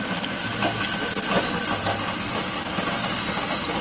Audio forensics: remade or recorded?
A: recorded